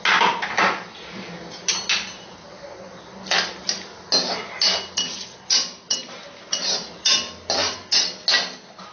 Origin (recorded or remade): recorded